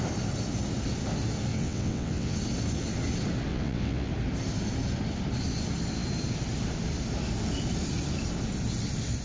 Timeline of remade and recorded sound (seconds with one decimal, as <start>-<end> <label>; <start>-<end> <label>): 0.0-1.5 recorded; 1.5-2.4 remade; 2.4-3.5 recorded; 3.5-4.1 remade; 4.1-9.2 recorded